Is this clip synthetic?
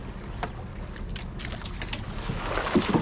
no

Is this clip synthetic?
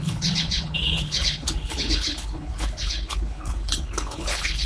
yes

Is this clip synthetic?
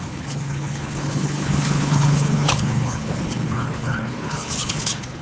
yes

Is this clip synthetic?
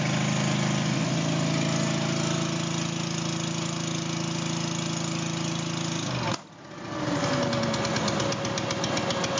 no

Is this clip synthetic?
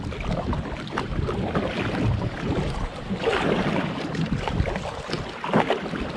no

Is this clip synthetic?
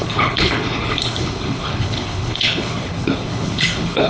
yes